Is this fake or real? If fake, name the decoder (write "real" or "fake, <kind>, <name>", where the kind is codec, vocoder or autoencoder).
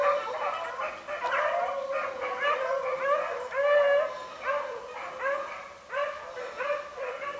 real